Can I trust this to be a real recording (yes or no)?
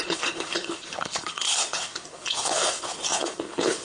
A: no